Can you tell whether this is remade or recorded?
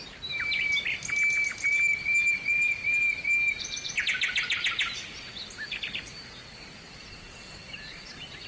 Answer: recorded